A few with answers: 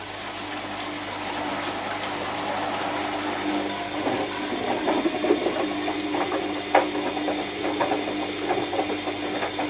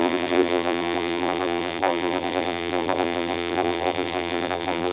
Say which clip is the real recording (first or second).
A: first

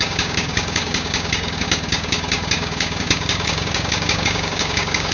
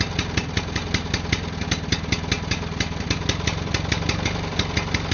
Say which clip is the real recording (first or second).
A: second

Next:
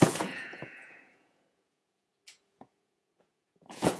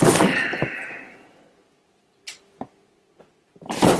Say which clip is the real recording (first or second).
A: second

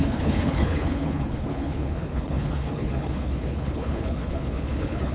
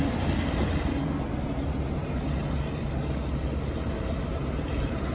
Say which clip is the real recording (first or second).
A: second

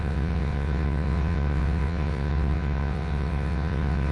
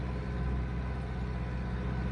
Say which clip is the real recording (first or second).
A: second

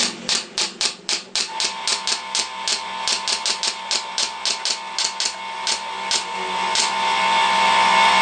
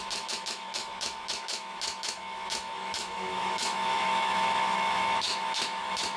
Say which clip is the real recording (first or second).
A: first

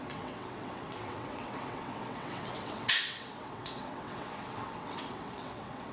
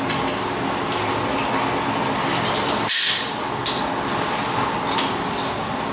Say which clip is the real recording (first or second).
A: second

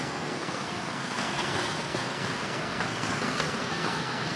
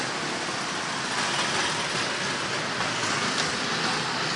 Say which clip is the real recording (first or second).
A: second